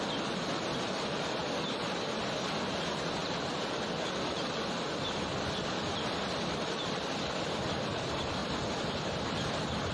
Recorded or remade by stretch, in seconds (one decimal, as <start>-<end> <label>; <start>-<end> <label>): 0.0-8.4 remade; 8.4-8.9 recorded; 8.9-9.9 remade